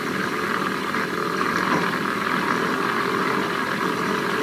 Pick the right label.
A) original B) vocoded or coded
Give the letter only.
A